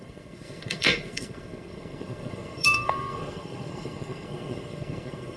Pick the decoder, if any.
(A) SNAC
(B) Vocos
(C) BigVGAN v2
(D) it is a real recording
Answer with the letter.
A